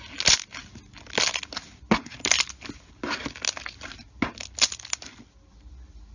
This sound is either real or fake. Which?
real